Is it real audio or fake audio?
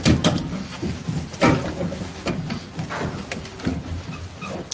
real